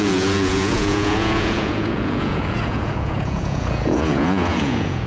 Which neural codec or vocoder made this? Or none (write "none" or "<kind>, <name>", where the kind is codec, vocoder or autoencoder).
vocoder, Vocos